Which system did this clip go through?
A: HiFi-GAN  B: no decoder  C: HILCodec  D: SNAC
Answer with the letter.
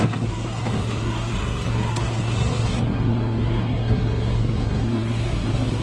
D